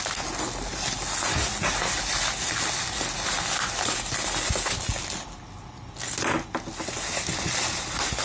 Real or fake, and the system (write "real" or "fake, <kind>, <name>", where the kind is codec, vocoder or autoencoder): real